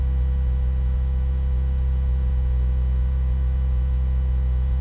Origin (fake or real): real